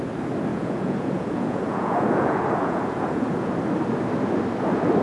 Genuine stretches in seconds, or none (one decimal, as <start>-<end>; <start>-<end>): 0.0-0.5; 3.5-5.0